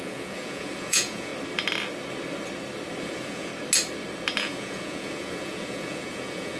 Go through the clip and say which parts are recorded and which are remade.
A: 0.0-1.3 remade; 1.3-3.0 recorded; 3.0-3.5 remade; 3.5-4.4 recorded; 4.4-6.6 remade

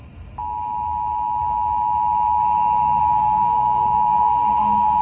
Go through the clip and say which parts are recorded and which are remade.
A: 0.0-3.0 recorded; 3.0-5.0 remade

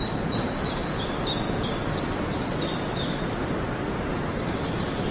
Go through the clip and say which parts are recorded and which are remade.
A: 0.0-0.8 remade; 0.8-3.9 recorded; 3.9-5.1 remade

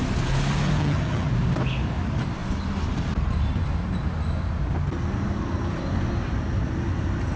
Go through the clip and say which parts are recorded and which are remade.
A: 0.0-0.8 recorded; 0.8-1.3 remade; 1.3-7.4 recorded

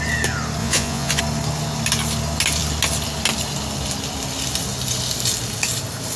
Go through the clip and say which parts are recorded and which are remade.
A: 0.0-0.6 recorded; 0.6-1.2 remade; 1.2-6.2 recorded

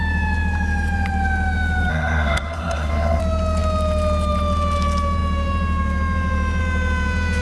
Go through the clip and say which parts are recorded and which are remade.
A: 0.0-1.9 recorded; 1.9-3.2 remade; 3.2-7.4 recorded

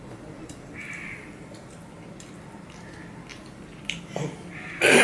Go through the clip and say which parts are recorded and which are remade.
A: 0.0-0.8 recorded; 0.8-1.8 remade; 1.8-5.0 recorded

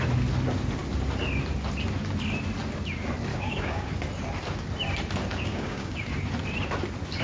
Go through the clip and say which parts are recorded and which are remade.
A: 0.0-3.3 recorded; 3.3-3.9 remade; 3.9-5.3 recorded; 5.3-6.0 remade; 6.0-7.2 recorded